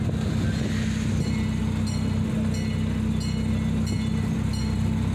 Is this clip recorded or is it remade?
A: recorded